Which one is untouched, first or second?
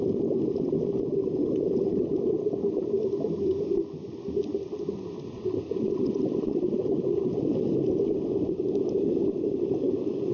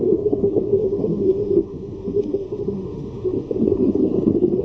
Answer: first